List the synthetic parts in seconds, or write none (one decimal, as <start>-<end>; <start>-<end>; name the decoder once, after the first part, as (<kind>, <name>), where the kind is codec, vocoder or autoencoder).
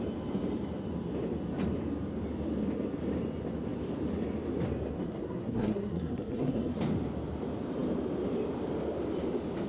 5.0-6.8 (codec, SNAC)